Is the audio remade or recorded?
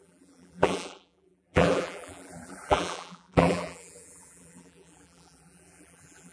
remade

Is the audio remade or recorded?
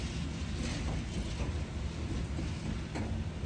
recorded